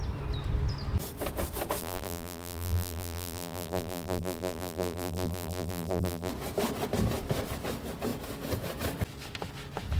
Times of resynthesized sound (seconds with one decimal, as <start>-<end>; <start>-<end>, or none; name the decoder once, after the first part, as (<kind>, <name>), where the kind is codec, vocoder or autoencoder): 1.8-6.3 (vocoder, BigVGAN v2)